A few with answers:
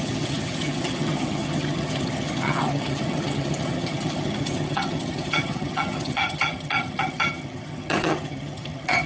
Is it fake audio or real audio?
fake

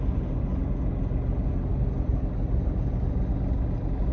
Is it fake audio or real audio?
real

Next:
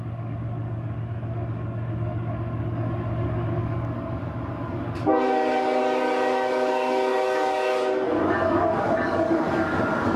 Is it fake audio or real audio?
fake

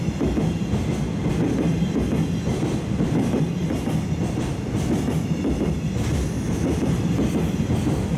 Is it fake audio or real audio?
real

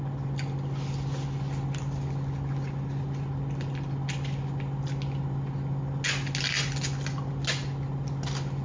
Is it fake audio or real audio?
real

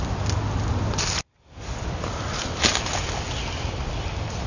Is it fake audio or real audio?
real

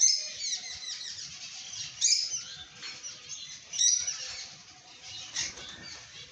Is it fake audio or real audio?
real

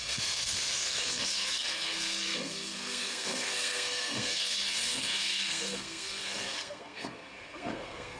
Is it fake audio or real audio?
fake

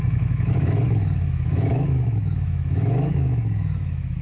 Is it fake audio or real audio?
fake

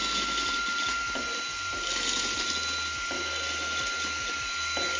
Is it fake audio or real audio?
real